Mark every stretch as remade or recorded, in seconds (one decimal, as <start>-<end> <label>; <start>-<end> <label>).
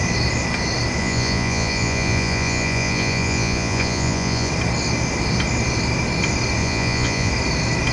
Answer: 0.0-1.0 recorded; 1.0-4.5 remade; 4.5-6.6 recorded; 6.6-7.3 remade; 7.3-7.9 recorded